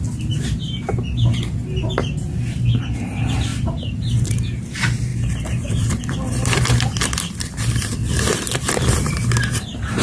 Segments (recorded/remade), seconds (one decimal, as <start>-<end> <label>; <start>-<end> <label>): 0.0-3.5 recorded; 3.5-4.3 remade; 4.3-5.1 recorded; 5.1-9.1 remade; 9.1-10.0 recorded